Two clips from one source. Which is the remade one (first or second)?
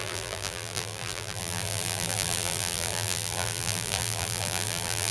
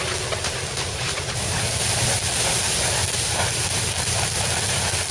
first